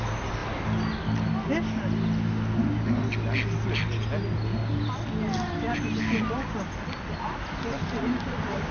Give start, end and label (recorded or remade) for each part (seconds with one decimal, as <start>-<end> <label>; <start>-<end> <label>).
0.0-8.7 recorded